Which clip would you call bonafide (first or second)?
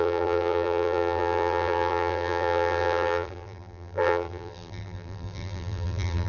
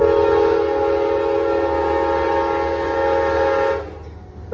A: second